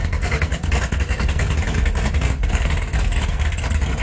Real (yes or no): no